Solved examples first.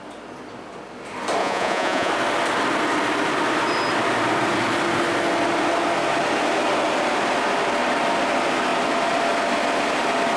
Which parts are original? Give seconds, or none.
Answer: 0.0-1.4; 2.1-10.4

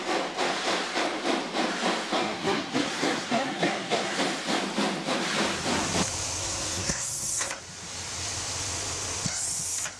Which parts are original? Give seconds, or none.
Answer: 0.0-2.2; 4.2-6.4; 7.6-10.0

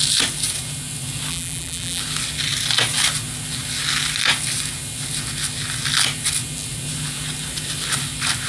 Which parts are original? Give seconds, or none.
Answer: 0.0-1.3; 2.0-8.5

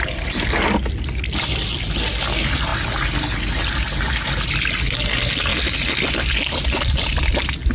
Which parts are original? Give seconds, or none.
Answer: 0.0-7.7

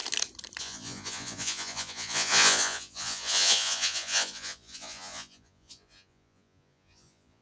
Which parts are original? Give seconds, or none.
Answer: 0.0-0.6